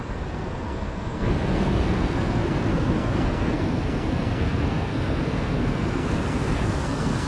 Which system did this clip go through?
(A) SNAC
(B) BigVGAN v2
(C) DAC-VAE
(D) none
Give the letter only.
A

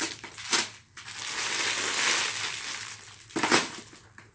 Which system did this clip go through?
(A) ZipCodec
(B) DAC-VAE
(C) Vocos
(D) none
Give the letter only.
D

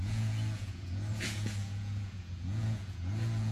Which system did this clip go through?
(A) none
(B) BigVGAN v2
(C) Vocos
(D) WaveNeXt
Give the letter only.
C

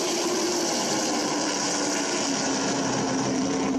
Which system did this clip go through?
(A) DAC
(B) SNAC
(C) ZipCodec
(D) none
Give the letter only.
D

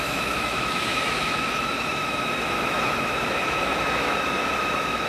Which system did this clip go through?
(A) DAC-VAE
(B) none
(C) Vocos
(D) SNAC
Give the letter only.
A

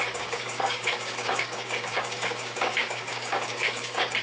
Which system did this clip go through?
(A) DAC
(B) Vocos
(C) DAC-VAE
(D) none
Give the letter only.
A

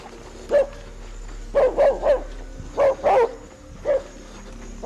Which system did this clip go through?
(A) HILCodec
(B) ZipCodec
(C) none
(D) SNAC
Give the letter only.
C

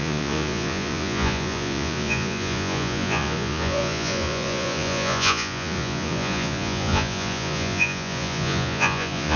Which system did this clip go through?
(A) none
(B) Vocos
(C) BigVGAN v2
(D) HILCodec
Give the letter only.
B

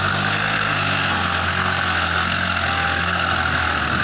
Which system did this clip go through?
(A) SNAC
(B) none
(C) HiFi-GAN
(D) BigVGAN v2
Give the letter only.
A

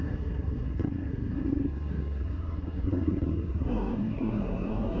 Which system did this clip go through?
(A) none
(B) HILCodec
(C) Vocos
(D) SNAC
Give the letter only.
D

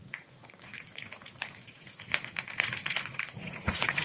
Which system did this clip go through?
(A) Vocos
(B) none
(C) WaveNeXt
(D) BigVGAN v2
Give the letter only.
A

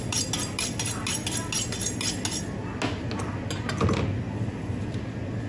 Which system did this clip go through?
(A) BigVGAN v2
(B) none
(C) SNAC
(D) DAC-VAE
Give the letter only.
B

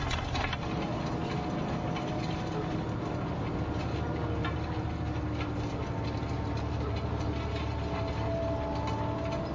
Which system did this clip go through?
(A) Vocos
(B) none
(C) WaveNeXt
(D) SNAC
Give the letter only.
B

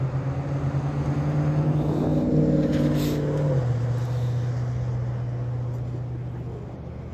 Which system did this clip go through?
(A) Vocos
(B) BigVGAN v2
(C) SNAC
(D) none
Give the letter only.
D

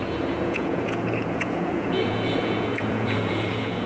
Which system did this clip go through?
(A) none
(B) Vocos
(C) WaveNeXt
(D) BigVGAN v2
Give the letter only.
B